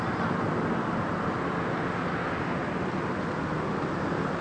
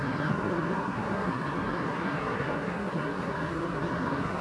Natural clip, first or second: first